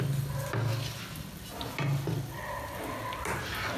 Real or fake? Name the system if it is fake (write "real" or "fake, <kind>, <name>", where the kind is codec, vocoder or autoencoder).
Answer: real